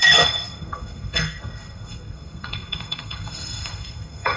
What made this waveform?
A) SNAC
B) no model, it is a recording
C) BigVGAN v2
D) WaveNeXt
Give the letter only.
A